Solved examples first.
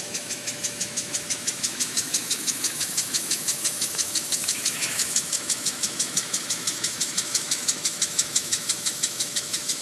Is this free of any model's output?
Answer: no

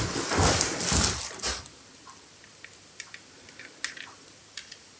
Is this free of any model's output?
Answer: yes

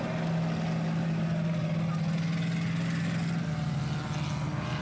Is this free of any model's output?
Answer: yes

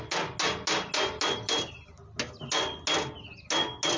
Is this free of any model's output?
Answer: yes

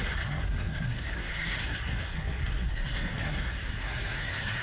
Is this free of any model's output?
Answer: no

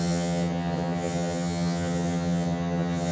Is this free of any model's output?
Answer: no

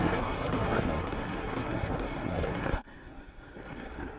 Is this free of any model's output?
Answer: no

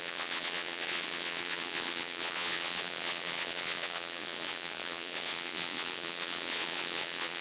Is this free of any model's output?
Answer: no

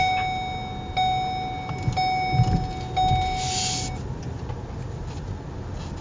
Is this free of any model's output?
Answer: yes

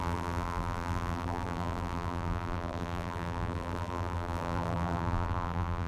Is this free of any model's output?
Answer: no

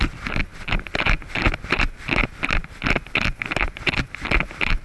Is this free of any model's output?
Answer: yes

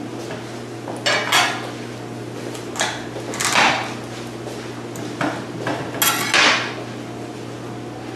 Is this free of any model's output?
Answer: yes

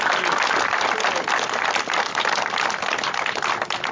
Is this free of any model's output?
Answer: yes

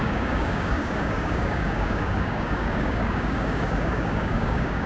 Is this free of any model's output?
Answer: no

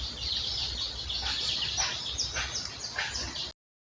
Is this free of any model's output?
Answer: yes